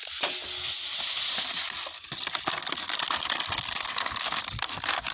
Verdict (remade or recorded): recorded